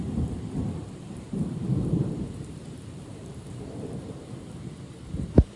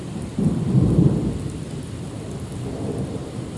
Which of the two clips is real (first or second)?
second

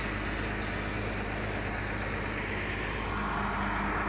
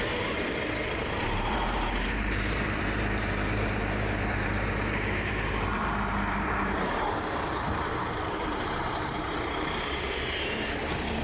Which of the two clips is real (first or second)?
first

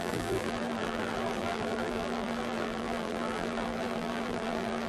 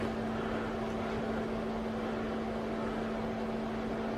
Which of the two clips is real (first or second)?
second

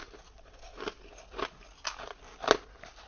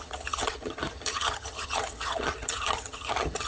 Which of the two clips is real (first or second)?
first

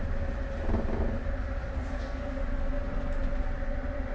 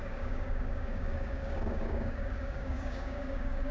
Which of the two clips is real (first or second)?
first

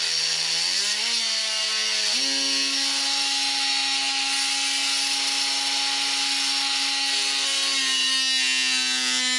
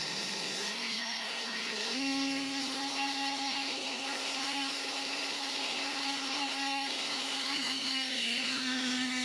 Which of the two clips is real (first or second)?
first